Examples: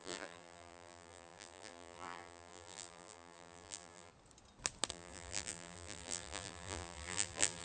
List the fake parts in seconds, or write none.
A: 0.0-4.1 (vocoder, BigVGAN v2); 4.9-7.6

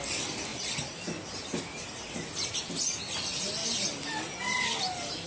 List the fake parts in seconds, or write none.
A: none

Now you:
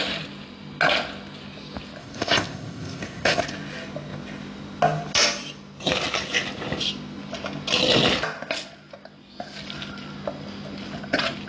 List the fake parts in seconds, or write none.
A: 2.0-3.4 (codec, ZipCodec)